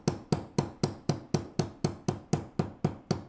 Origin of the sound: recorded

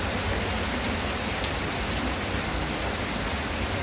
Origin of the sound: recorded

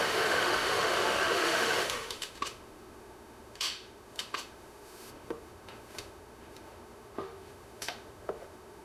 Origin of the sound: remade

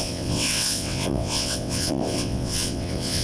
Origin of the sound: remade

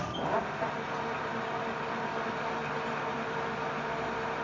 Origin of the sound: recorded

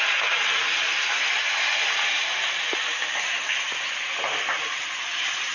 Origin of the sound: recorded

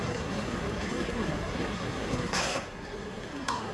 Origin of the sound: remade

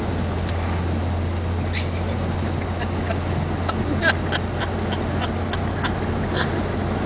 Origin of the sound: recorded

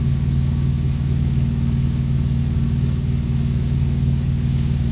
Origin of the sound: remade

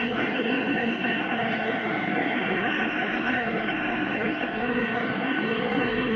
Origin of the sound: remade